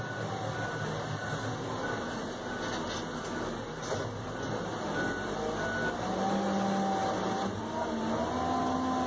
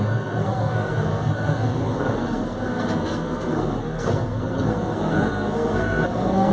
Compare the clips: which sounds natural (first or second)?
first